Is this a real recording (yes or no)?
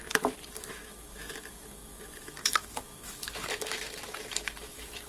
no